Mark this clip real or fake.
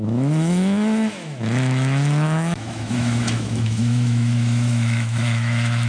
fake